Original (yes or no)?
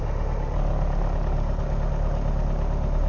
yes